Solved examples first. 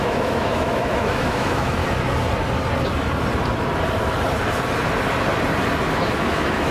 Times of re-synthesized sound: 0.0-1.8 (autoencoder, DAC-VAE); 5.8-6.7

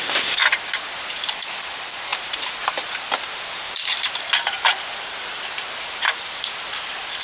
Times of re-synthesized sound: 0.0-0.4 (vocoder, BigVGAN v2); 1.1-7.2